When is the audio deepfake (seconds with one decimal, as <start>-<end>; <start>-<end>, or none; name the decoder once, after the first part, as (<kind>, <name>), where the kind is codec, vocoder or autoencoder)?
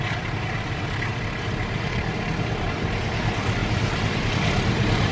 0.0-5.1 (vocoder, BigVGAN v2)